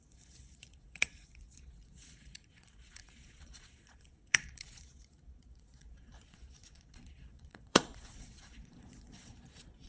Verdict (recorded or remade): remade